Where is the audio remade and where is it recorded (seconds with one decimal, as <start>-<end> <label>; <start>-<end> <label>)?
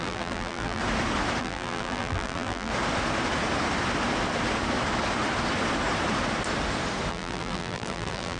0.0-0.8 remade; 0.8-1.4 recorded; 1.4-2.7 remade; 2.7-7.1 recorded; 7.1-8.4 remade